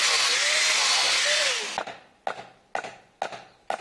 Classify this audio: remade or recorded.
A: recorded